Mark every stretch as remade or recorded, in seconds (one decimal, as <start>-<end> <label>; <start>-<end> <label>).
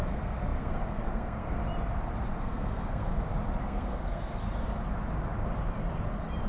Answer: 0.0-1.6 remade; 1.6-2.4 recorded; 2.4-3.1 remade; 3.1-3.6 recorded; 3.6-4.3 remade; 4.3-6.5 recorded